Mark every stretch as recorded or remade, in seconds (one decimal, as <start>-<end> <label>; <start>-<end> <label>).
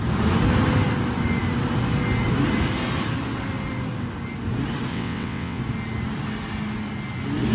0.0-4.9 recorded; 4.9-5.6 remade; 5.6-7.5 recorded